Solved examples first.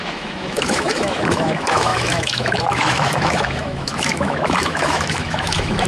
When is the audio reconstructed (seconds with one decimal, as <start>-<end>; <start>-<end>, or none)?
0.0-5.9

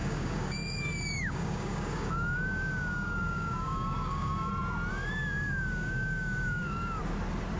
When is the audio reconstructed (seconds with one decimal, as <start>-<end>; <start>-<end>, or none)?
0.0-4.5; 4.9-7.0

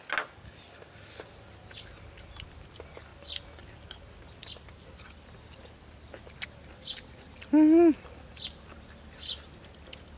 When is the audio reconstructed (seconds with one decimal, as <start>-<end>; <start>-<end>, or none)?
none

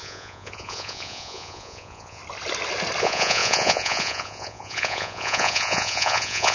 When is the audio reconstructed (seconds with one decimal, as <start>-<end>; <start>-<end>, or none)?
0.0-2.2; 3.0-6.5

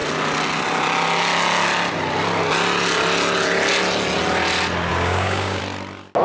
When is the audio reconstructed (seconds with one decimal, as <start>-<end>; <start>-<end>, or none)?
4.9-5.6

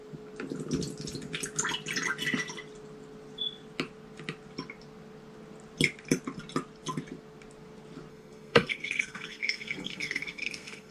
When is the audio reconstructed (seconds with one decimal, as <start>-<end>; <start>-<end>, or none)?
8.1-10.9